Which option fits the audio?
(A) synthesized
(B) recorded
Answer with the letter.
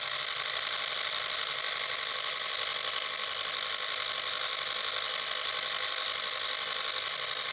B